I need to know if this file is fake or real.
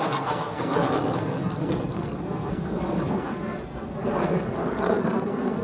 fake